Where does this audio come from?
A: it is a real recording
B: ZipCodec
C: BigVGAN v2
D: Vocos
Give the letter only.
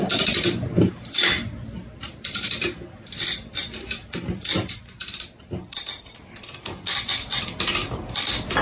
C